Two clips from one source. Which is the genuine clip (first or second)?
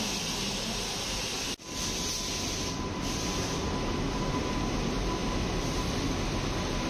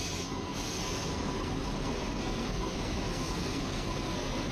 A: first